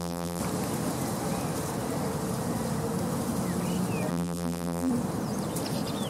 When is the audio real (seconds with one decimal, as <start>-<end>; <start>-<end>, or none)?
0.4-4.1; 4.9-6.1